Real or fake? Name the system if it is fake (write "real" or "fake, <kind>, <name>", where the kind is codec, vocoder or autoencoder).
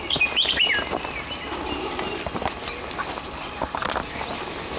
real